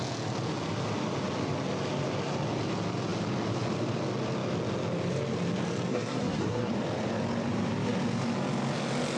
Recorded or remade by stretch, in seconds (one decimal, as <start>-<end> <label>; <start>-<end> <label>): 0.0-5.9 recorded; 5.9-6.7 remade; 6.7-9.2 recorded